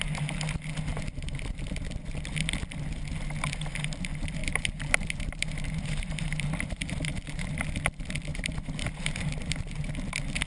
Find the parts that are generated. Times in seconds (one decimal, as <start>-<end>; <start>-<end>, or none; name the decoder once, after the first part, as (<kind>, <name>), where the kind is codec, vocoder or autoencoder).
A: 0.9-1.6 (vocoder, BigVGAN v2); 4.4-7.7; 8.3-9.9